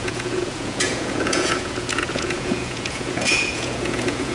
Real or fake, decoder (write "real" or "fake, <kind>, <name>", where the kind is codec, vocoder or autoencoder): fake, vocoder, Vocos